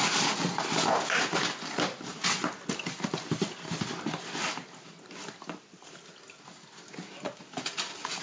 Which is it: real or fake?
real